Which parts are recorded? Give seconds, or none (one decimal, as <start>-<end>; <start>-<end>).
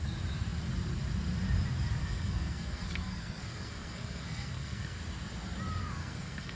0.0-2.0; 5.0-5.8